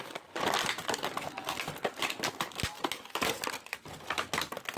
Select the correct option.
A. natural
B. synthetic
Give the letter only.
A